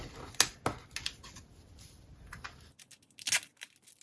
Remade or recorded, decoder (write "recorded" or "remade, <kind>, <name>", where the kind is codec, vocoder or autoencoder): recorded